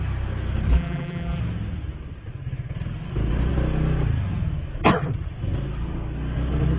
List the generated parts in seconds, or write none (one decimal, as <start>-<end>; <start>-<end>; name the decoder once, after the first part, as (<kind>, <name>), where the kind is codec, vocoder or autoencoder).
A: 0.7-1.4 (vocoder, BigVGAN v2)

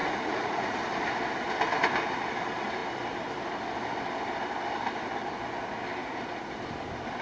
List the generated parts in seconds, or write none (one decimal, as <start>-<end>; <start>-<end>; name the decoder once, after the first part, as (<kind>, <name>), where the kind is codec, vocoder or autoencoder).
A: 0.0-0.8 (vocoder, Vocos); 6.0-6.6